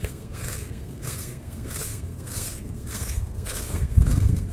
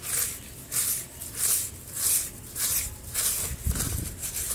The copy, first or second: first